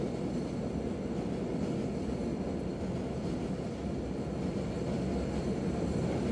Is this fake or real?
real